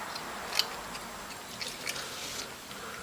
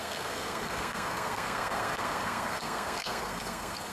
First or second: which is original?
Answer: first